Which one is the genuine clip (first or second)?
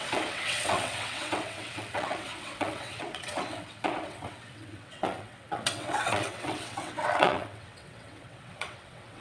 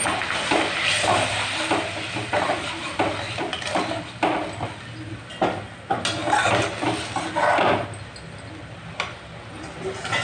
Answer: second